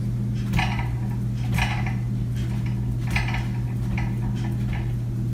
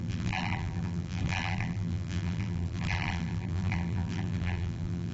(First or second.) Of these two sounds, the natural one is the first